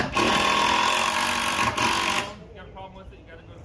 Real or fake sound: real